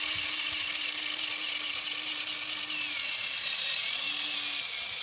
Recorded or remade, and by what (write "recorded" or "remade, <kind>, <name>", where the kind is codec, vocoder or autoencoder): recorded